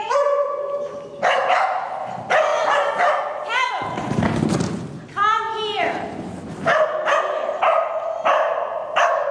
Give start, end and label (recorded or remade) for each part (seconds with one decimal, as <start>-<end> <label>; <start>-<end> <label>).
0.0-9.3 recorded